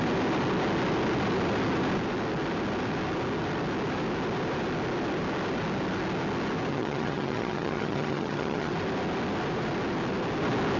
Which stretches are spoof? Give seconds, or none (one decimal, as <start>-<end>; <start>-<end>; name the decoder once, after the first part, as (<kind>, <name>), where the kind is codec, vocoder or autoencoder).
6.7-8.7 (vocoder, HiFi-GAN)